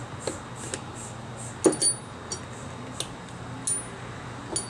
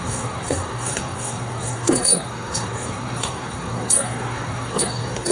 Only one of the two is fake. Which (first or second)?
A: second